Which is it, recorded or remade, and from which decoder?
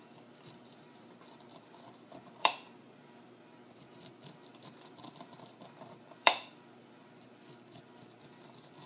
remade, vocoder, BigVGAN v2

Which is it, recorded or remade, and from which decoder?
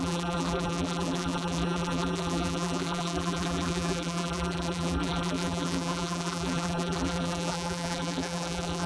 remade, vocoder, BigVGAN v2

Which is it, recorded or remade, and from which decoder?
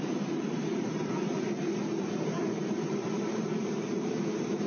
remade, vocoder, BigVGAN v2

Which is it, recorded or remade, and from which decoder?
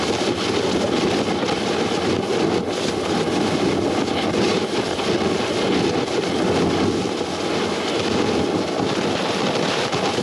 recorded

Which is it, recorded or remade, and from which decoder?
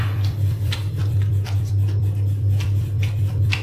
remade, vocoder, BigVGAN v2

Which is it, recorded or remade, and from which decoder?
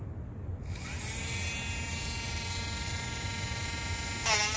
recorded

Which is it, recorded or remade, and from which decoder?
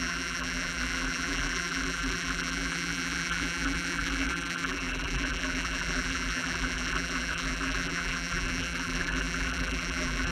remade, vocoder, BigVGAN v2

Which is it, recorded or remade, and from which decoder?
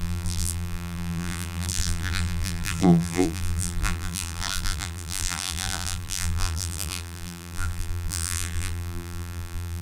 remade, vocoder, BigVGAN v2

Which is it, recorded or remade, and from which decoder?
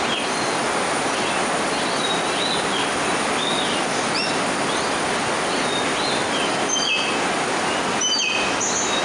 recorded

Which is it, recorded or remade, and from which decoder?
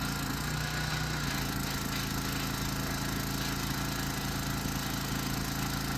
recorded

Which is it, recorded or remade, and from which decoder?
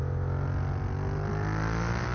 recorded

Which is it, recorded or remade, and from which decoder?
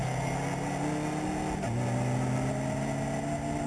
recorded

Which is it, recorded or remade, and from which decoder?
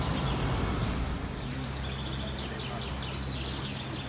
recorded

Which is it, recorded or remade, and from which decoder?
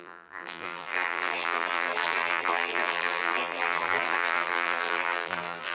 remade, vocoder, BigVGAN v2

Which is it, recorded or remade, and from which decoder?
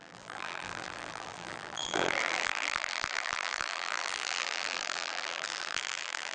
remade, vocoder, BigVGAN v2